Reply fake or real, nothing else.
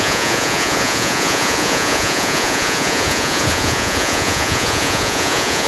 fake